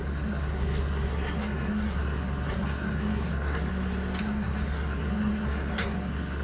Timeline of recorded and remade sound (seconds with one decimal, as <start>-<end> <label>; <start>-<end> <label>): 0.0-3.7 remade; 3.7-4.2 recorded; 4.2-6.4 remade